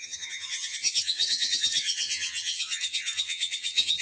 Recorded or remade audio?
remade